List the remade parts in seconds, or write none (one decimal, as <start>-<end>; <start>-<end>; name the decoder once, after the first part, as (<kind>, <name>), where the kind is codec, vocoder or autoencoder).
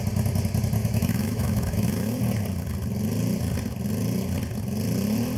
0.8-2.2 (autoencoder, DAC-VAE)